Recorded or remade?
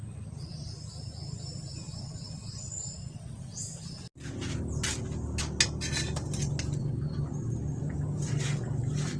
recorded